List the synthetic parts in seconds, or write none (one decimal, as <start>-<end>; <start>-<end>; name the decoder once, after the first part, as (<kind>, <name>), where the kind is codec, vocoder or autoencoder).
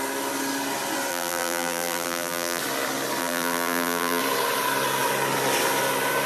1.1-2.6 (vocoder, BigVGAN v2); 3.2-4.2